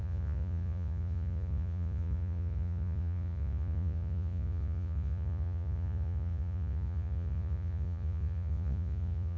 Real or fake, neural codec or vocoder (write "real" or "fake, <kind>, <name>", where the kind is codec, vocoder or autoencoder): fake, vocoder, Vocos